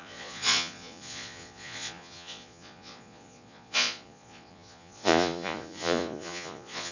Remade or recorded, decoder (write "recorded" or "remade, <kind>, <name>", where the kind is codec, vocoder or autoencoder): remade, vocoder, Vocos